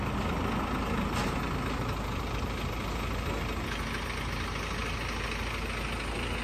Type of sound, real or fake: real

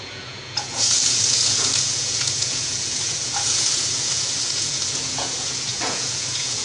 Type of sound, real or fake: fake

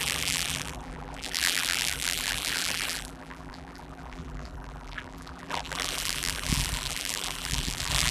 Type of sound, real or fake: fake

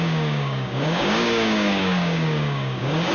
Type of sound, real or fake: fake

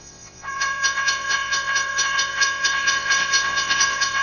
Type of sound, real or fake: fake